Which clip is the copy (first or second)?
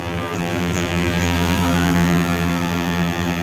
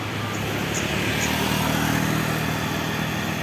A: first